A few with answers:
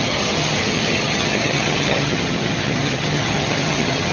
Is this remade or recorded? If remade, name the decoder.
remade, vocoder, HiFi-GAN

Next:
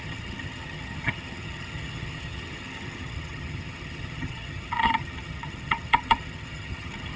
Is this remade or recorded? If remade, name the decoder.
remade, vocoder, HiFi-GAN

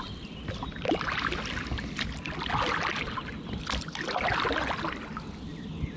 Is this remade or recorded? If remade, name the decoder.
recorded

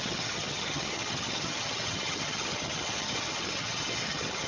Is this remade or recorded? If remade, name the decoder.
remade, vocoder, HiFi-GAN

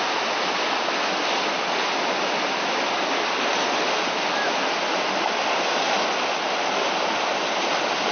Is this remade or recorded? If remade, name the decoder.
recorded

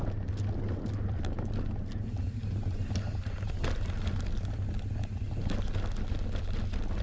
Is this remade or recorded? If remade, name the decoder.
recorded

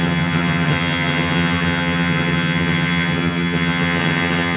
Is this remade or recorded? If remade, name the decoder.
remade, vocoder, HiFi-GAN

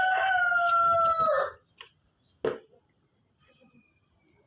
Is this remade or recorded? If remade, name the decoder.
recorded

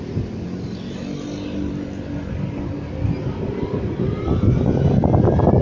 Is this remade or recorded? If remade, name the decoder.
recorded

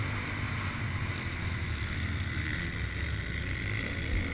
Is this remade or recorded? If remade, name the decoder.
recorded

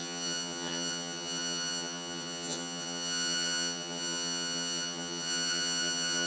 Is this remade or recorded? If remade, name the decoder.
remade, vocoder, HiFi-GAN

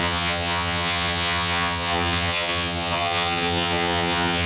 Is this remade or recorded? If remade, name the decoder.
remade, vocoder, HiFi-GAN